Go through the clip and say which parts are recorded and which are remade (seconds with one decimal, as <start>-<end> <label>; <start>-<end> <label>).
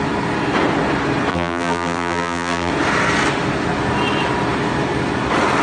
0.0-1.3 recorded; 1.3-2.7 remade; 2.7-5.6 recorded